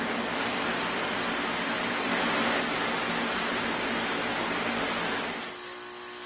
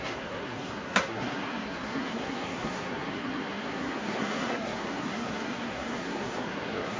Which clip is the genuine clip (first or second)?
first